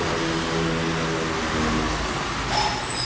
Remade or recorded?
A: recorded